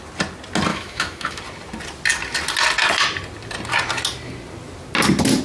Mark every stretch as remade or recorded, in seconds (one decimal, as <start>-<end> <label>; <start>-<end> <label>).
0.0-0.7 recorded; 0.7-1.4 remade; 1.4-5.4 recorded